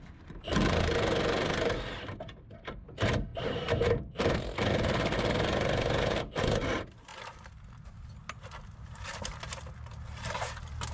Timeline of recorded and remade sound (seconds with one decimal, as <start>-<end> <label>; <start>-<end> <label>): 0.0-3.3 recorded; 3.3-6.4 remade; 6.4-7.1 recorded; 7.1-9.0 remade; 9.0-10.9 recorded